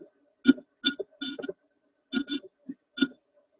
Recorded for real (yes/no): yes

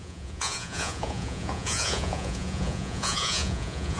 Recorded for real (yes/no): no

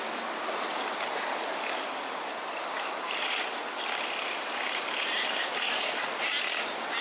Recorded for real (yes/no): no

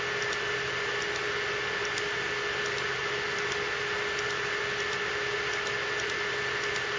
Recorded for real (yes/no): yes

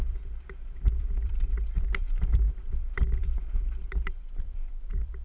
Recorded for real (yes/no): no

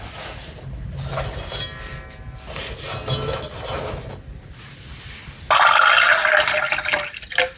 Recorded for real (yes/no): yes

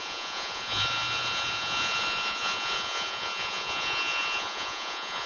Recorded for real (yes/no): no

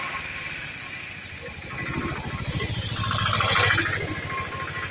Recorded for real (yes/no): yes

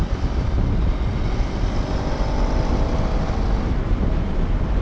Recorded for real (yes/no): yes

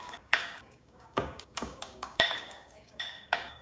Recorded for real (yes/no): no